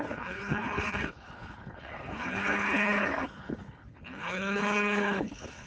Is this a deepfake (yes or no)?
yes